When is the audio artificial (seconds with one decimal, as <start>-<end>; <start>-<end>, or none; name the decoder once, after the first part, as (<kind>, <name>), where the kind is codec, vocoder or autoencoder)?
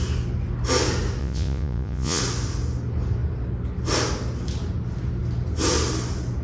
1.2-2.2 (vocoder, Vocos)